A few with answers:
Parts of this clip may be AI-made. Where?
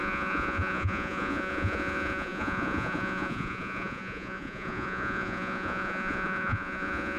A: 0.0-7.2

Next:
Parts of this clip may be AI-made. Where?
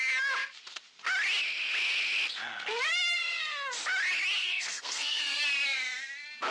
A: 3.2-3.7; 4.4-5.4